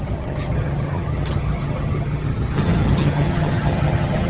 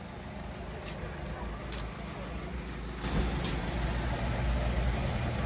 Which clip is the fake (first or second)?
first